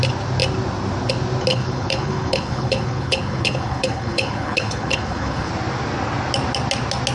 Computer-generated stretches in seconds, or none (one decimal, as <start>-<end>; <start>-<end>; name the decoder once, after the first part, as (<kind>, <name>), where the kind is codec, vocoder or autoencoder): 1.5-5.5 (codec, HILCodec)